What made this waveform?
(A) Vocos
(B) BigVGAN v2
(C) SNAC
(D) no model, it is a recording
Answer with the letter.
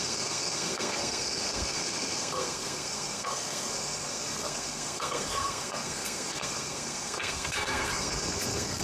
C